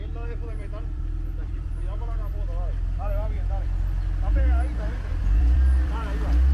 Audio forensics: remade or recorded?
remade